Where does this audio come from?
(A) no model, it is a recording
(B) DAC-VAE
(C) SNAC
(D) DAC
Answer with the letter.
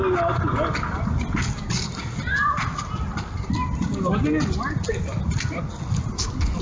A